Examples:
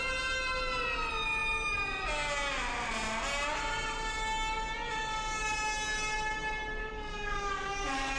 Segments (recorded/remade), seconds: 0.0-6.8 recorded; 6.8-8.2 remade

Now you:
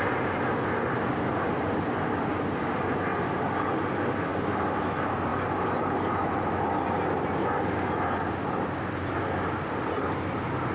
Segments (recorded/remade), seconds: 0.0-10.7 recorded

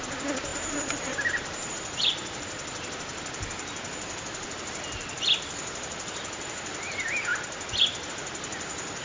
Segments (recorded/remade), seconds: 0.0-9.0 recorded